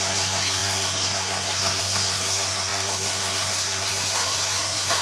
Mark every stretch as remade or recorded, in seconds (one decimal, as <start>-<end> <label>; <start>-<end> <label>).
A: 0.0-5.0 remade